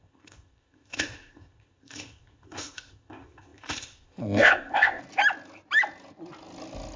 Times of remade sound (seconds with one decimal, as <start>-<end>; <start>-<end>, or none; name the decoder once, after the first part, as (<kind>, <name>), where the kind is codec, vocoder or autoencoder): 0.0-5.0 (codec, ZipCodec)